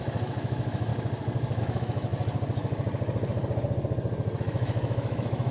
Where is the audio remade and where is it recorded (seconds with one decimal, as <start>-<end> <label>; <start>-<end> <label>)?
0.0-0.9 remade; 0.9-1.6 recorded; 1.6-2.1 remade; 2.1-4.4 recorded; 4.4-5.5 remade